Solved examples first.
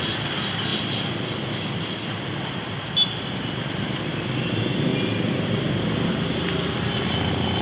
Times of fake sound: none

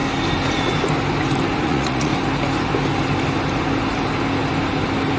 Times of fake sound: 1.6-2.1 (vocoder, Vocos)

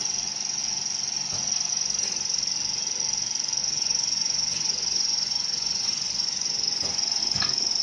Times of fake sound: 3.6-7.2 (vocoder, Vocos)